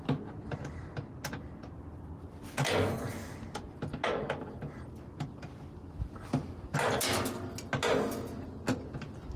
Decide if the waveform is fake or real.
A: real